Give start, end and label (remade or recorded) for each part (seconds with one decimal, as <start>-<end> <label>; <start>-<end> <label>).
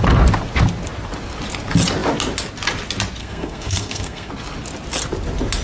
0.0-3.2 recorded; 3.2-4.3 remade; 4.3-5.6 recorded